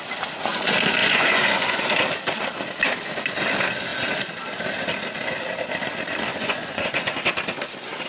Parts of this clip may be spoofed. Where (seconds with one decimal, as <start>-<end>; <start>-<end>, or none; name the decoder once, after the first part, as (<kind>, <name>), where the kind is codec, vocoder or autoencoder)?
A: 1.0-1.9 (vocoder, Vocos); 6.3-7.2